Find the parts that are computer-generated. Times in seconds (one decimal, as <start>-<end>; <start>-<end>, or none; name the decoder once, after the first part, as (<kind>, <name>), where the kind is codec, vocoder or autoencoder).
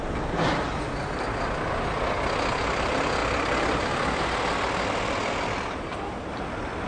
none